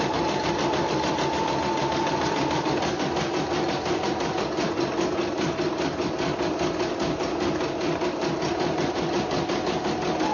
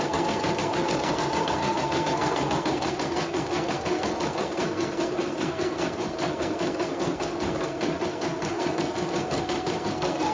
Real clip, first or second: first